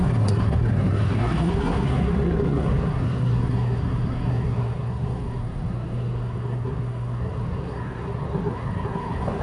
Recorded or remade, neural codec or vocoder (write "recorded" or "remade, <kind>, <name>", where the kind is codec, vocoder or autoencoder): remade, codec, SNAC